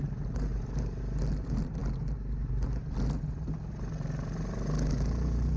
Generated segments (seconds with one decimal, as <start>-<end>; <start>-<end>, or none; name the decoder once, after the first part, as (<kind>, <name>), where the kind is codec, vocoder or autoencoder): 0.5-1.0 (vocoder, BigVGAN v2)